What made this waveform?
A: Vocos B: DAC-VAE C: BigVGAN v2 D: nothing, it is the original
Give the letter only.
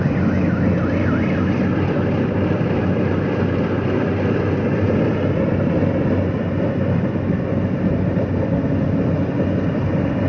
D